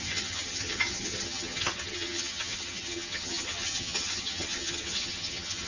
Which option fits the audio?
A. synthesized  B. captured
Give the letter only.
A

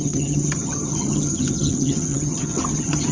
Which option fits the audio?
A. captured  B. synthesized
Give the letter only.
B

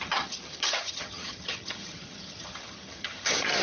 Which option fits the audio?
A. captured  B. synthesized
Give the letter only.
B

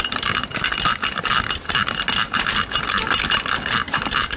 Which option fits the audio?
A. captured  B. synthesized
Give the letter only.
A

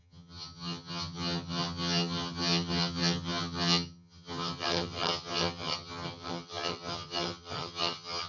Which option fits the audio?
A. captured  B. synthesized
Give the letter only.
B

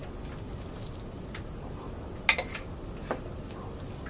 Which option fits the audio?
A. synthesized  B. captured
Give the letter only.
B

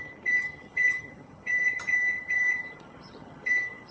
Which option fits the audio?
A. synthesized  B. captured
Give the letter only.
A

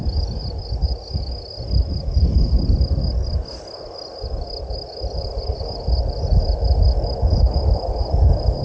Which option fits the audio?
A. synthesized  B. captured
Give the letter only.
B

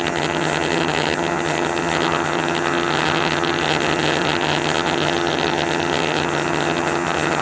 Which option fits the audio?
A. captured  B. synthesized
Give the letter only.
B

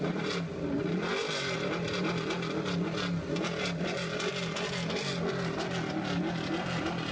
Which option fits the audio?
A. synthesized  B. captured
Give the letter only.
B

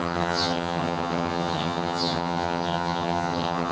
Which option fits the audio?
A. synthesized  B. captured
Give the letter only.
A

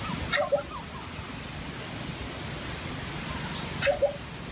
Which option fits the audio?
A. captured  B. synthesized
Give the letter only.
A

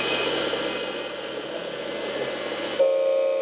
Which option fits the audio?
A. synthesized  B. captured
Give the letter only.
B